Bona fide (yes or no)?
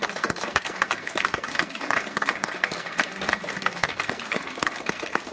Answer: no